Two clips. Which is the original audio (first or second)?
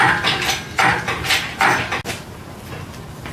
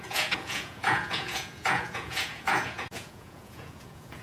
first